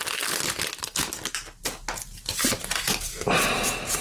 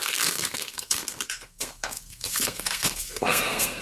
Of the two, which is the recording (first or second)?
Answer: first